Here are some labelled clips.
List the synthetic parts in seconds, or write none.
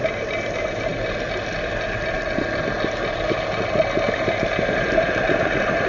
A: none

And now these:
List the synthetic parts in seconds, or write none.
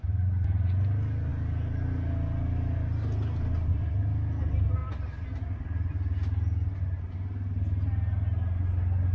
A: none